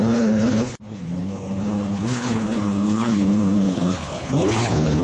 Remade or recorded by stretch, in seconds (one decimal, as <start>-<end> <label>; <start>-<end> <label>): 0.0-5.0 remade

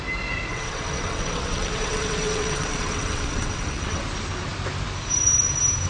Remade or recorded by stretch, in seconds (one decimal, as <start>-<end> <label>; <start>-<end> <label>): 0.0-0.5 recorded; 0.5-4.0 remade; 4.0-5.9 recorded

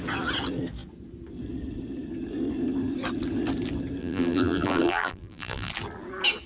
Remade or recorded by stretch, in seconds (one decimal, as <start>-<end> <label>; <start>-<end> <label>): 0.0-4.0 recorded; 4.0-5.7 remade; 5.7-6.5 recorded

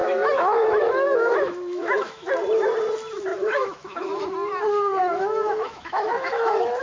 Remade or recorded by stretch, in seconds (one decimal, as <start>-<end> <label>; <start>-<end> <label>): 0.0-2.3 remade; 2.3-3.3 recorded; 3.3-4.2 remade; 4.2-5.0 recorded; 5.0-6.8 remade